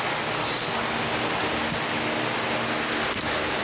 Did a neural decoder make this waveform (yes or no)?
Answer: no